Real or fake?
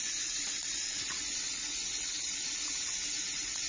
fake